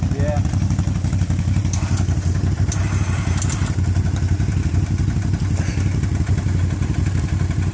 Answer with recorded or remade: recorded